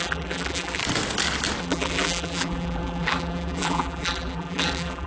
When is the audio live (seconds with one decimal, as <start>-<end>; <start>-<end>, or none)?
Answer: 0.8-1.6